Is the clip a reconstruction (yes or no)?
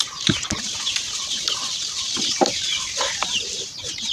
yes